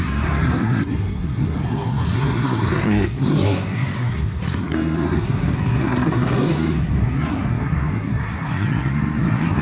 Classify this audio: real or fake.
fake